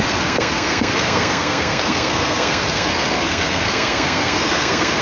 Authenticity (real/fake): fake